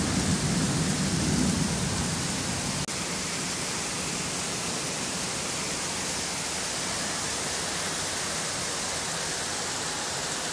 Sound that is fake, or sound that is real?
real